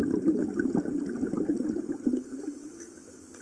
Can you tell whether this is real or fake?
real